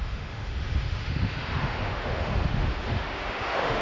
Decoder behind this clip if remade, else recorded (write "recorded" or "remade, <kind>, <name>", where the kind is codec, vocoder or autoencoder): remade, autoencoder, DAC-VAE